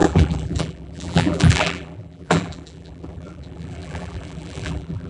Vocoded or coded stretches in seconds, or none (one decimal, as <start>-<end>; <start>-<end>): 0.0-5.1